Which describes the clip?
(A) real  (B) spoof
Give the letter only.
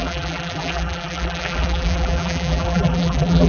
B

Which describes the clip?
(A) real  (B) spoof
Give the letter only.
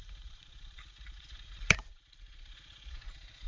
B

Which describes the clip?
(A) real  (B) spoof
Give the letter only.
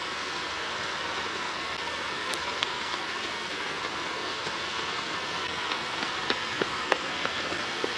B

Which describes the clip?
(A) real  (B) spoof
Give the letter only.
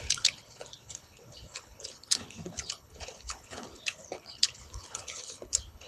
B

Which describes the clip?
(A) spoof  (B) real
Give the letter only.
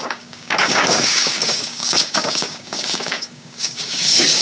A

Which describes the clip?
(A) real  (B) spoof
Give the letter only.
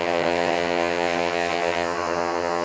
B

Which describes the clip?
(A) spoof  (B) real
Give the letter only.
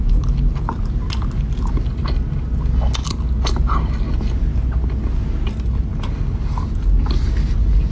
B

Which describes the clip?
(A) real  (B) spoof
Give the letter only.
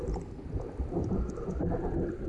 A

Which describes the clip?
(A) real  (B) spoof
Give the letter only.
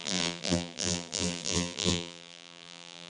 B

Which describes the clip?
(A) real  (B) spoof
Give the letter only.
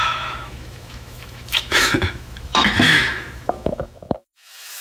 B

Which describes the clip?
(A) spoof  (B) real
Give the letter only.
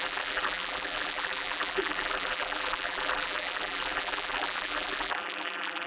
A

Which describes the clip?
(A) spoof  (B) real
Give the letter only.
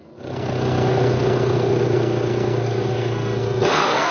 A